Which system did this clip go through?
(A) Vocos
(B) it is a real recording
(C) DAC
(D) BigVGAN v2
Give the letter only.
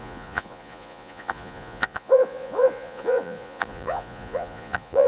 A